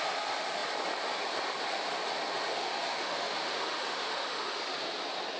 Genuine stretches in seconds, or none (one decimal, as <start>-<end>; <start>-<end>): 0.0-2.5; 4.6-5.4